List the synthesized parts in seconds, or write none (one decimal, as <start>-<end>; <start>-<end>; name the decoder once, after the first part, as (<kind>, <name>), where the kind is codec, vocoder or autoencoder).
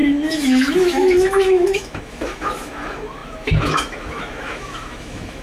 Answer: 0.0-5.4 (autoencoder, DAC-VAE)